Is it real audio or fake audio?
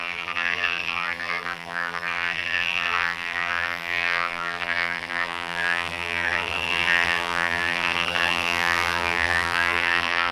fake